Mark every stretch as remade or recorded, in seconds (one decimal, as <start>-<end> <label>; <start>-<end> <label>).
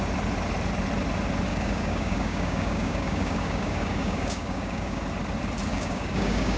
0.0-1.5 recorded; 1.5-5.0 remade; 5.0-5.7 recorded; 5.7-6.6 remade